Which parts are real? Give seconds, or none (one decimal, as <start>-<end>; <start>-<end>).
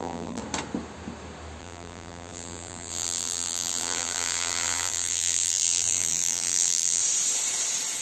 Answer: 0.4-1.6; 7.0-8.0